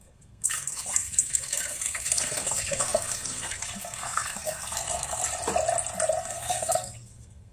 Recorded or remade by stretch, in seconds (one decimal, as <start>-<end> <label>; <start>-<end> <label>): 0.0-5.2 remade; 5.2-6.2 recorded; 6.2-7.5 remade